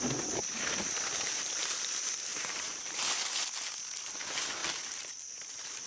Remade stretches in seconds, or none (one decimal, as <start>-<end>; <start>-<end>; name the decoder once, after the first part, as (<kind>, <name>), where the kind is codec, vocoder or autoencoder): 2.3-3.0 (vocoder, BigVGAN v2); 4.6-5.9